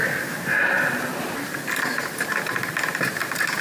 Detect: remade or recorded recorded